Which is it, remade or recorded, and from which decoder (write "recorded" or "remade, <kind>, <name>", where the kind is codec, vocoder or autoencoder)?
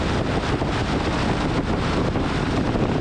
recorded